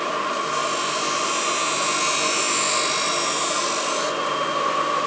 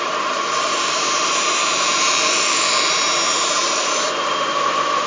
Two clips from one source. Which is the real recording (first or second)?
first